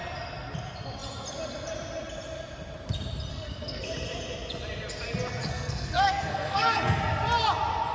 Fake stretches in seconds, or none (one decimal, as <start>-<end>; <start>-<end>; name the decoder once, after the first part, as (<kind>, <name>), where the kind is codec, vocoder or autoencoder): 3.3-3.8 (codec, SNAC); 5.5-7.0